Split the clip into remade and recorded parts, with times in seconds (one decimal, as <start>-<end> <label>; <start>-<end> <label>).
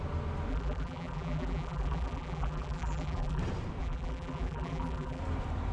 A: 0.0-0.5 recorded; 0.5-3.4 remade; 3.4-3.8 recorded; 3.8-5.2 remade; 5.2-5.7 recorded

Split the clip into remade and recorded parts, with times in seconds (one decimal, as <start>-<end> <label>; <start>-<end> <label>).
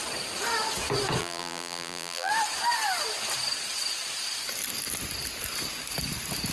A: 0.0-1.2 recorded; 1.2-2.3 remade; 2.3-6.5 recorded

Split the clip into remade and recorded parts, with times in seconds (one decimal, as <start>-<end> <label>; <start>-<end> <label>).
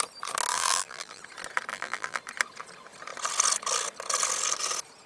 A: 0.0-0.5 recorded; 0.5-1.2 remade; 1.2-1.7 recorded; 1.7-2.2 remade; 2.2-5.1 recorded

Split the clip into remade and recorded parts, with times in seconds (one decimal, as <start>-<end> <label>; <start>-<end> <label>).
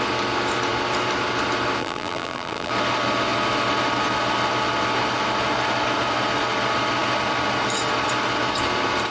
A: 0.0-1.8 recorded; 1.8-2.7 remade; 2.7-9.1 recorded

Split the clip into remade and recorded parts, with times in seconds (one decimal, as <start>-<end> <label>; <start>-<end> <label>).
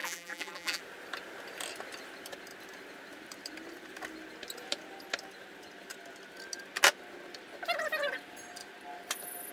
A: 0.0-0.8 remade; 0.8-9.5 recorded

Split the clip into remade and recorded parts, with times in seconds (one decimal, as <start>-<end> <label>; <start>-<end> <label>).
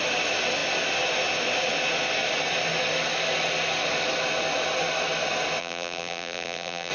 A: 0.0-5.6 recorded; 5.6-6.9 remade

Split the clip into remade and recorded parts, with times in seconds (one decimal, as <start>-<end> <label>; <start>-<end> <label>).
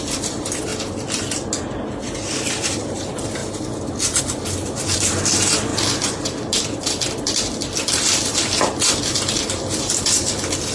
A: 0.0-0.7 remade; 0.7-2.0 recorded; 2.0-3.4 remade; 3.4-4.2 recorded; 4.2-10.7 remade